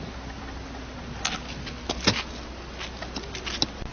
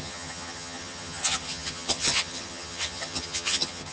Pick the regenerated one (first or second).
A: second